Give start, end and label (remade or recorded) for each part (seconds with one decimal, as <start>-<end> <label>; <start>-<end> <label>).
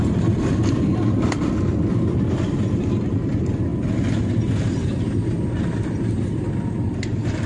0.0-7.5 recorded